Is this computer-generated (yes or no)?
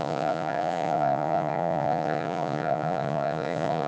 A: yes